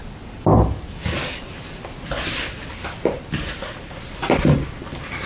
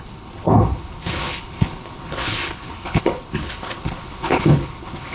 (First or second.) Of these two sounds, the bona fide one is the first